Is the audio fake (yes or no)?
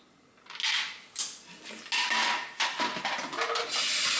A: no